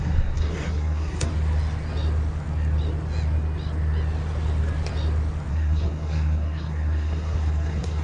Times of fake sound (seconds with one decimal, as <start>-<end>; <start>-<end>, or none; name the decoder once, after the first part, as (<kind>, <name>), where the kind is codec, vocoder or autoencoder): 0.0-1.3 (codec, SNAC); 5.5-8.0